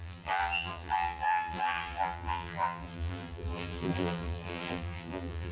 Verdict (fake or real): fake